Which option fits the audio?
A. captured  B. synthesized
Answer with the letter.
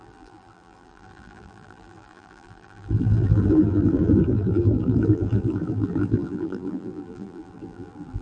B